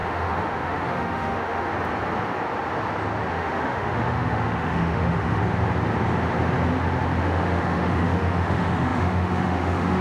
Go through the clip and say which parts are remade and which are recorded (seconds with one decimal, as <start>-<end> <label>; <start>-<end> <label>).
0.0-1.7 remade; 1.7-3.3 recorded; 3.3-5.4 remade; 5.4-7.2 recorded; 7.2-10.0 remade